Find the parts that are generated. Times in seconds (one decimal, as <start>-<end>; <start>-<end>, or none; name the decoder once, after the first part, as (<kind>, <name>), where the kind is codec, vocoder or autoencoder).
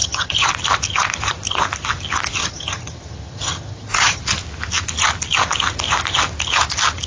0.0-0.5 (vocoder, HiFi-GAN); 2.4-4.2